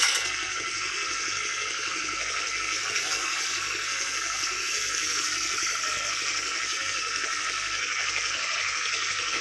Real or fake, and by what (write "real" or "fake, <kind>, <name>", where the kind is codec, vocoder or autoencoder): fake, codec, SNAC